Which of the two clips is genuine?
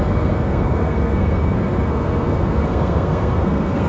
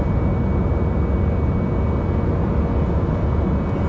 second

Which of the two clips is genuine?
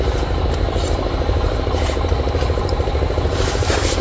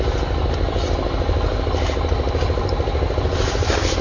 second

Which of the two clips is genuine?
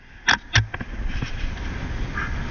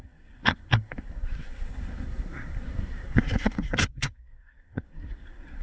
first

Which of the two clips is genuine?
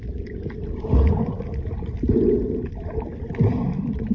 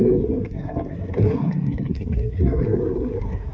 first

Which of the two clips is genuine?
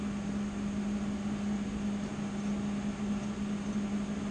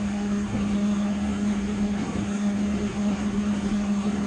first